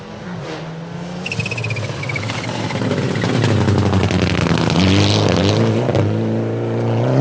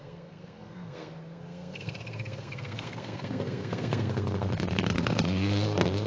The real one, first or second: first